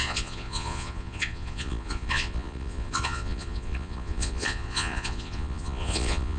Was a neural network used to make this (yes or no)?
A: yes